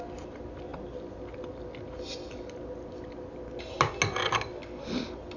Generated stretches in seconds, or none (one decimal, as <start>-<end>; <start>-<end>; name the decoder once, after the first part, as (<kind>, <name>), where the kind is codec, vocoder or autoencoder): none